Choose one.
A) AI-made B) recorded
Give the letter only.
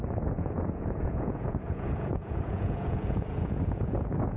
A